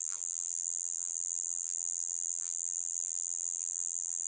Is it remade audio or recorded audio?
remade